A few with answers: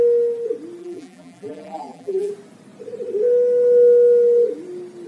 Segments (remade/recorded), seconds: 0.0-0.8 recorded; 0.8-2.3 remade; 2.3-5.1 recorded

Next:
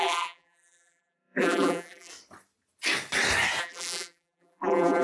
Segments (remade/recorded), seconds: 0.0-2.1 remade; 2.1-3.6 recorded; 3.6-5.0 remade

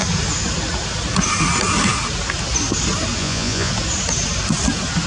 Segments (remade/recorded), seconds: 0.0-3.2 recorded; 3.2-3.7 remade; 3.7-5.1 recorded

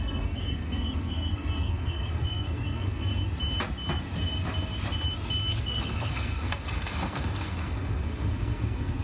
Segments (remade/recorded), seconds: 0.0-3.1 remade; 3.1-5.6 recorded; 5.6-9.0 remade

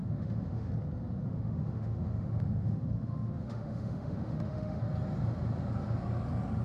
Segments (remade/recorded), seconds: 0.0-0.7 remade; 0.7-1.3 recorded; 1.3-4.8 remade; 4.8-6.6 recorded